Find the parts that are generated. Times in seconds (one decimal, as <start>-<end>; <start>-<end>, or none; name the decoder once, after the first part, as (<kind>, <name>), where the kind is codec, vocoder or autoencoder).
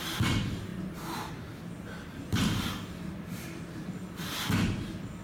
none